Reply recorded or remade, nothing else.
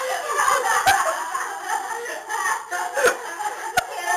recorded